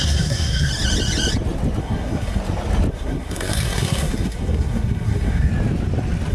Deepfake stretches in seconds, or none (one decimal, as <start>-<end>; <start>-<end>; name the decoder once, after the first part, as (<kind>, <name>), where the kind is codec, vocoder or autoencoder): 0.0-0.7 (codec, SNAC); 1.8-2.4; 2.9-5.5